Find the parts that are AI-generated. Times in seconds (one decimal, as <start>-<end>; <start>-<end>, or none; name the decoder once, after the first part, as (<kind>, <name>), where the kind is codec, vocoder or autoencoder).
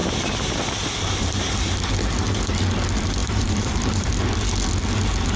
0.0-1.9 (vocoder, BigVGAN v2); 3.2-4.1